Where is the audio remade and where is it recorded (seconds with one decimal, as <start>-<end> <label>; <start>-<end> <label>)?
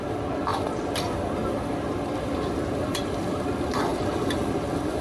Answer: 0.0-3.9 recorded; 3.9-4.5 remade; 4.5-5.0 recorded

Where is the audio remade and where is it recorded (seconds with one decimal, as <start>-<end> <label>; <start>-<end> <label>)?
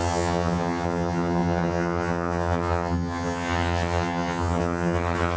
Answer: 0.0-5.4 remade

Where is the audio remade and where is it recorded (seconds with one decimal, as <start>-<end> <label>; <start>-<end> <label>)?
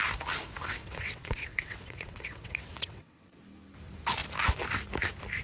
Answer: 0.0-0.8 recorded; 0.8-3.4 remade; 3.4-5.4 recorded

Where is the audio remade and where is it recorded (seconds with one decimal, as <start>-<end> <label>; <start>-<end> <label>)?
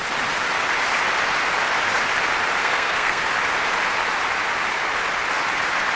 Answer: 0.0-2.6 recorded; 2.6-3.2 remade; 3.2-6.0 recorded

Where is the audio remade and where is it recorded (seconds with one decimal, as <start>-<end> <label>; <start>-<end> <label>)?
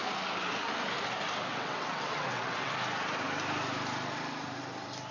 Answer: 0.0-1.5 recorded; 1.5-2.7 remade; 2.7-5.1 recorded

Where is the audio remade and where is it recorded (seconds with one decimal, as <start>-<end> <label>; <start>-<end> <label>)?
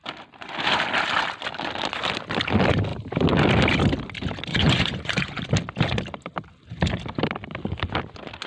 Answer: 0.0-4.5 recorded; 4.5-5.5 remade; 5.5-8.5 recorded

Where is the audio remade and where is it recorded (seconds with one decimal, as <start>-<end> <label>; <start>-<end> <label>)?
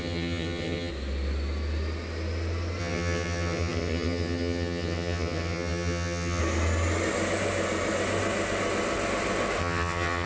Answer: 0.0-0.9 remade; 0.9-2.8 recorded; 2.8-6.4 remade; 6.4-9.6 recorded; 9.6-10.3 remade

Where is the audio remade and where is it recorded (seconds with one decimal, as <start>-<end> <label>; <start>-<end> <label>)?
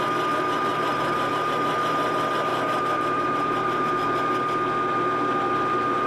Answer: 0.0-0.7 recorded; 0.7-1.3 remade; 1.3-2.5 recorded; 2.5-3.9 remade; 3.9-6.1 recorded